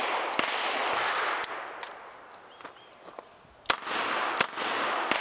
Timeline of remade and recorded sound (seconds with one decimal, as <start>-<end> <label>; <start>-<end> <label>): 0.0-5.2 recorded